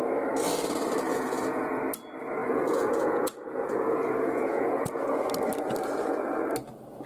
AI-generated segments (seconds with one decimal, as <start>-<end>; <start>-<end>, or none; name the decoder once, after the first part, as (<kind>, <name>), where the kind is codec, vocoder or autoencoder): 1.1-1.8 (vocoder, Vocos); 2.4-5.1